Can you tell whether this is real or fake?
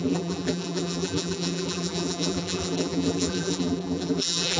fake